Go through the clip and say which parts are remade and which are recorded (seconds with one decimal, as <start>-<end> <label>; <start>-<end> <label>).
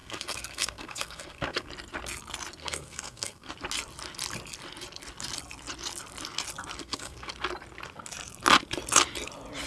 0.0-1.7 remade; 1.7-2.6 recorded; 2.6-3.5 remade; 3.5-6.8 recorded; 6.8-7.3 remade; 7.3-9.7 recorded